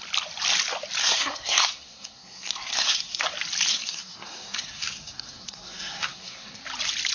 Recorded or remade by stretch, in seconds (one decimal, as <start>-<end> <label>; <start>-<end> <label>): 0.0-1.0 recorded; 1.0-3.2 remade; 3.2-3.7 recorded; 3.7-6.6 remade; 6.6-7.1 recorded